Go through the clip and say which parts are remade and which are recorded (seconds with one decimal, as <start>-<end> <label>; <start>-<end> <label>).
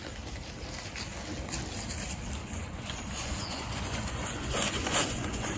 0.0-2.4 recorded; 2.4-5.6 remade